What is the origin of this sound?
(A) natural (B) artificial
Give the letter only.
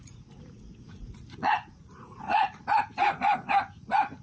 B